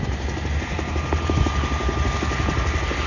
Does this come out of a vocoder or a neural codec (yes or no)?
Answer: no